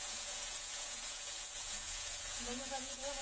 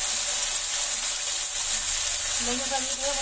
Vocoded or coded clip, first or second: first